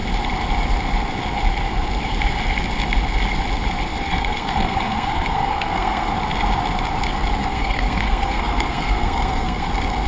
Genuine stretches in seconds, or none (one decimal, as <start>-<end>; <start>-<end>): 0.0-3.9; 6.1-7.4; 9.7-10.1

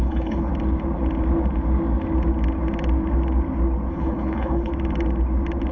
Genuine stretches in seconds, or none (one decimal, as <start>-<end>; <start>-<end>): 0.5-3.9; 4.7-5.7

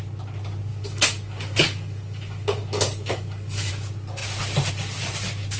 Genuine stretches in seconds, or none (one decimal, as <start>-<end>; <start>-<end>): 0.0-0.7; 3.7-5.6

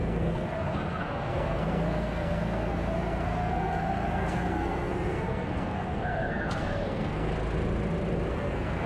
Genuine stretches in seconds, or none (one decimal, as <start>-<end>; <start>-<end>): 7.3-8.3

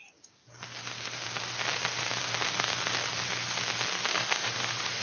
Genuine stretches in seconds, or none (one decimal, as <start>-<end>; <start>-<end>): 0.0-4.1